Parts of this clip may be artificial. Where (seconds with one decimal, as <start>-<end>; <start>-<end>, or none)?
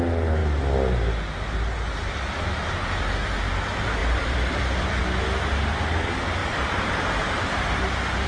4.0-5.0; 6.4-7.6